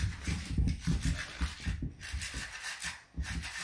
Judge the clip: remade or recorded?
recorded